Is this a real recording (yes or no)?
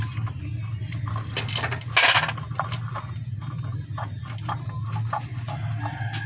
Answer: yes